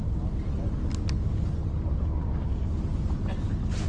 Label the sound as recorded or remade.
recorded